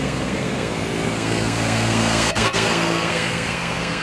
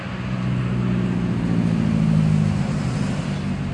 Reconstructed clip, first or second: first